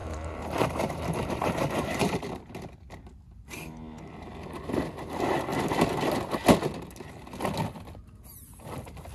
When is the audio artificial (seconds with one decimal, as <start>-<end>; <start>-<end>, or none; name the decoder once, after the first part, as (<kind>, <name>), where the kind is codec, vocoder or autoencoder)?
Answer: 0.0-2.1 (vocoder, BigVGAN v2)